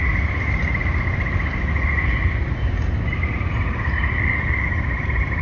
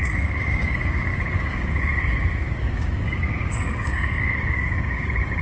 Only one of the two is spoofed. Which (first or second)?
second